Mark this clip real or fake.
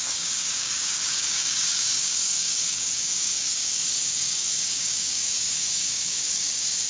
fake